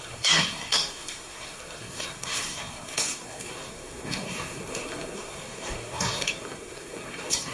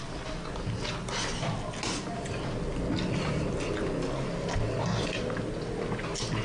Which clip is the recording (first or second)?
second